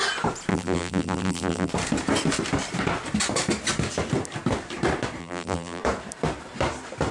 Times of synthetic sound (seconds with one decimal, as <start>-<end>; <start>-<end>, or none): 0.5-1.7; 5.2-5.8